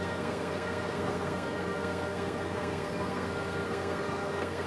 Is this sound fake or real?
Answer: fake